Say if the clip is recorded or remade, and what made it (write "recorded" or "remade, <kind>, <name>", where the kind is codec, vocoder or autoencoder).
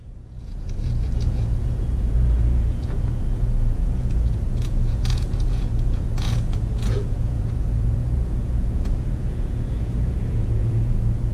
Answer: remade, vocoder, Vocos